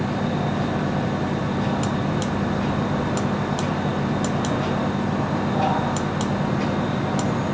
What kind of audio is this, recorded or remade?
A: recorded